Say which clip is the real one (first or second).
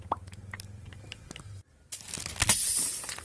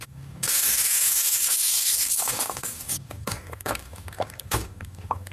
first